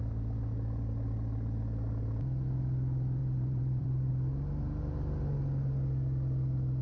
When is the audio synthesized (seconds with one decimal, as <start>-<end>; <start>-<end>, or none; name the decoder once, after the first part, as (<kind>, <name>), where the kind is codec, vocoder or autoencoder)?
3.2-4.1 (vocoder, BigVGAN v2)